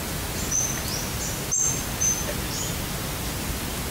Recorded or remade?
recorded